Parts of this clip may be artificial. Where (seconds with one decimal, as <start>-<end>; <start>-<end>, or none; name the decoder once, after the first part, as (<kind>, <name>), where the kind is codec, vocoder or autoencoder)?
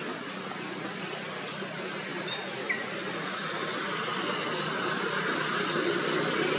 none